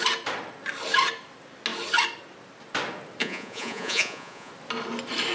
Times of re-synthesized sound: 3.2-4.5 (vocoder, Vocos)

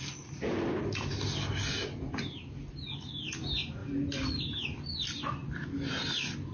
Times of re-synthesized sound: 3.8-4.4 (vocoder, BigVGAN v2)

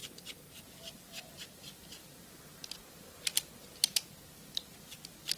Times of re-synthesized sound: none

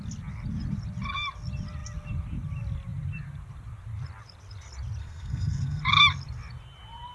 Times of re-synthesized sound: 5.0-5.8 (codec, SNAC)

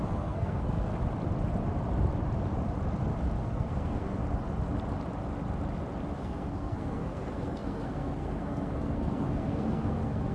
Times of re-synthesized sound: 0.0-0.9 (codec, SNAC); 3.4-4.2; 6.2-10.3

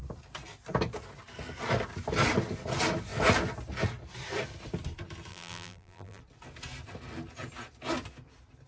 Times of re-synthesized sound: 5.3-6.2 (vocoder, BigVGAN v2)

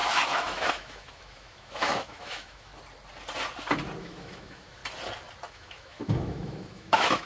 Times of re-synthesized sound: 0.0-2.7 (autoencoder, DAC-VAE); 4.0-4.8; 5.5-7.3